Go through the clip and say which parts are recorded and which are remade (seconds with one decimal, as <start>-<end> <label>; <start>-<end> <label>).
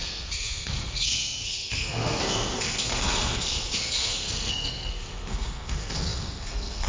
0.0-6.9 remade